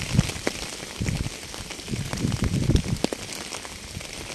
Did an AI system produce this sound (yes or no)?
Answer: no